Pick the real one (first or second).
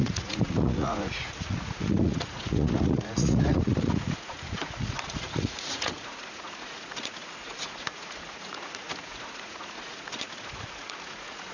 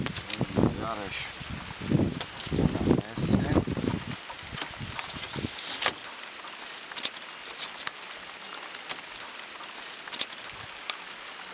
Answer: second